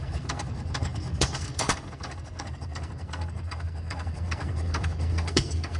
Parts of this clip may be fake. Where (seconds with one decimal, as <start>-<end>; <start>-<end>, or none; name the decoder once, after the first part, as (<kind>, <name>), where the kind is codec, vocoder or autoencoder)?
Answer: 0.0-5.8 (codec, SNAC)